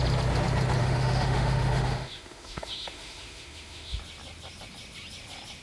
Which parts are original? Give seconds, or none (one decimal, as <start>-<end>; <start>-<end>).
0.0-0.8; 4.0-5.6